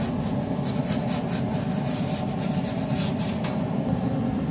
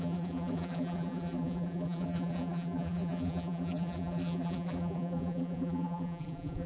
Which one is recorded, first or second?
first